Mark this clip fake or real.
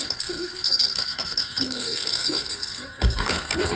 fake